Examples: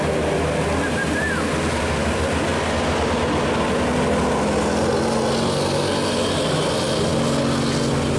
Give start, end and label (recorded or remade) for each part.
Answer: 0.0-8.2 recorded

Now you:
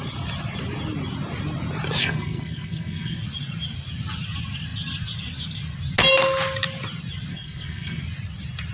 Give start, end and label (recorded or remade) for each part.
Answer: 0.0-2.0 recorded; 2.0-3.2 remade; 3.2-7.3 recorded; 7.3-8.0 remade; 8.0-8.7 recorded

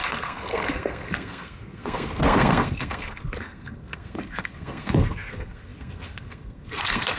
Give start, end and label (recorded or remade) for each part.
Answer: 0.0-7.2 remade

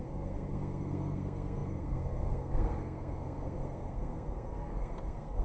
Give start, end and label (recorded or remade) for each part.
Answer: 0.0-5.4 remade

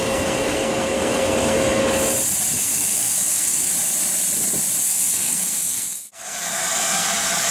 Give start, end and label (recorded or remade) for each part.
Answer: 0.0-1.8 remade; 1.8-2.6 recorded; 2.6-3.7 remade; 3.7-4.8 recorded; 4.8-7.5 remade

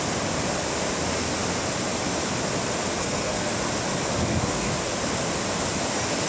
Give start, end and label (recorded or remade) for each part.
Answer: 0.0-3.0 recorded; 3.0-3.5 remade; 3.5-4.2 recorded; 4.2-4.7 remade; 4.7-6.3 recorded

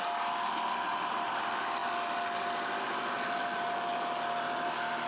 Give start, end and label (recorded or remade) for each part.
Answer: 0.0-5.1 recorded